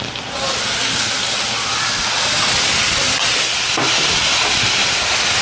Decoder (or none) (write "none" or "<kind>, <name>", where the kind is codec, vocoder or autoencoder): vocoder, BigVGAN v2